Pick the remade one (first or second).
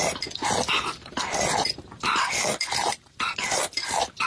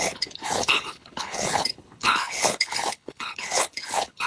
second